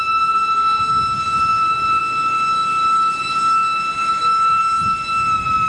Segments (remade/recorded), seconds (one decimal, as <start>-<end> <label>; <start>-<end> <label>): 0.0-1.5 recorded; 1.5-2.0 remade; 2.0-4.0 recorded; 4.0-4.6 remade; 4.6-5.7 recorded